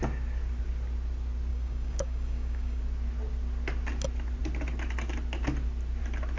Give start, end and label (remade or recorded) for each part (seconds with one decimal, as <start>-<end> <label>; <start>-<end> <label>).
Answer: 0.0-1.5 recorded; 1.5-2.8 remade; 2.8-6.4 recorded